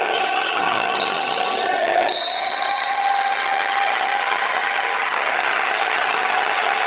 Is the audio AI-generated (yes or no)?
yes